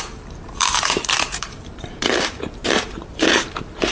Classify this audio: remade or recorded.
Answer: remade